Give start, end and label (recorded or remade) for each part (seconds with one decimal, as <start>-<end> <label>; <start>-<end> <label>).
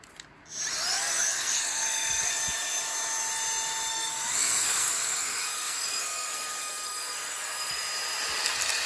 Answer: 0.0-0.9 recorded; 0.9-2.3 remade; 2.3-3.9 recorded; 3.9-7.8 remade; 7.8-8.9 recorded